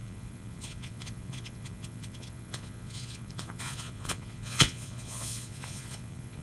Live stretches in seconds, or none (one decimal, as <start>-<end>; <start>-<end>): none